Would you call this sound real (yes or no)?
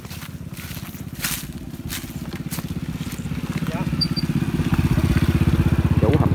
yes